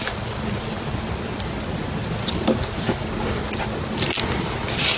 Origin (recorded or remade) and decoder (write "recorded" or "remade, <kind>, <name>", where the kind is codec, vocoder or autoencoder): recorded